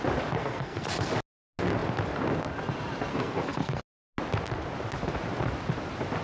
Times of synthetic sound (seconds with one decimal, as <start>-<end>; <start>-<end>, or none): 0.4-1.1; 3.1-3.8